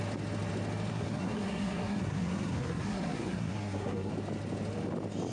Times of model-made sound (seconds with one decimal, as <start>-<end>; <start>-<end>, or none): 0.9-4.1